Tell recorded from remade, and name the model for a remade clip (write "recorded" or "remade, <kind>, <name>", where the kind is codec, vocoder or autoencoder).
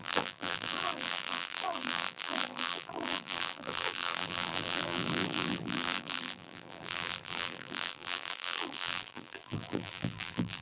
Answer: remade, vocoder, BigVGAN v2